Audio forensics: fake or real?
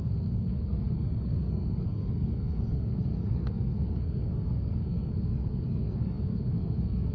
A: fake